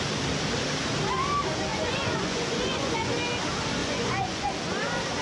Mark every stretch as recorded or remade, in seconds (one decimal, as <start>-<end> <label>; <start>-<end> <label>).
0.0-1.7 recorded; 1.7-3.1 remade; 3.1-3.8 recorded; 3.8-4.5 remade; 4.5-5.2 recorded